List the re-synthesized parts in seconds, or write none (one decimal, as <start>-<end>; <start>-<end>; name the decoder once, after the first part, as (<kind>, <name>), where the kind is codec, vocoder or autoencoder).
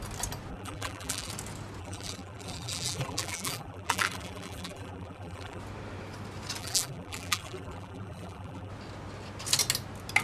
0.5-1.3 (vocoder, BigVGAN v2); 1.8-5.6; 6.6-8.7